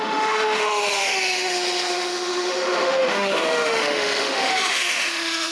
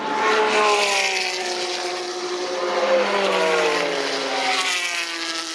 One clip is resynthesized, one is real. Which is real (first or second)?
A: second